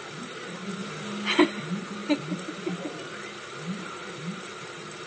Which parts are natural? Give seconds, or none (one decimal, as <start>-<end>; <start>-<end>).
0.0-5.1